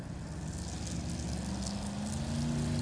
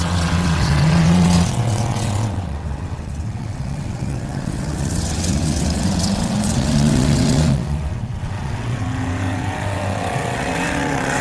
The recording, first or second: first